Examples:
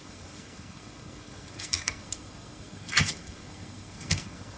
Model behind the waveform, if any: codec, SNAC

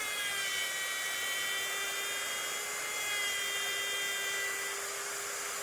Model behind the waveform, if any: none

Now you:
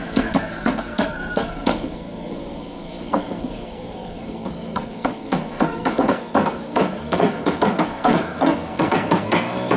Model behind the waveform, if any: codec, SNAC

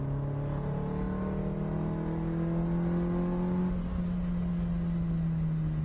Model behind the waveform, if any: none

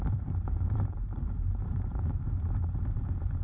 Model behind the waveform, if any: vocoder, BigVGAN v2